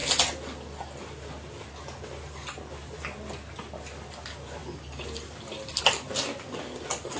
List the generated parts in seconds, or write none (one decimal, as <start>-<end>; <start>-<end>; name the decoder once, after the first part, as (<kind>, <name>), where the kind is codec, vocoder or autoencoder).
4.6-5.8 (vocoder, BigVGAN v2)